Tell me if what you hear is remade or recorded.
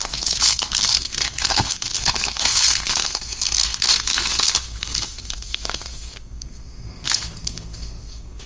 remade